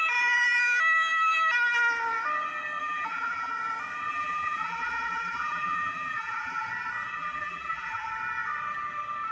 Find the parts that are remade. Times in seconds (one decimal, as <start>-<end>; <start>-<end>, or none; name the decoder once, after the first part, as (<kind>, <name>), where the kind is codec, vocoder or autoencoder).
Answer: 2.8-3.5 (vocoder, BigVGAN v2); 4.1-6.7; 7.2-8.1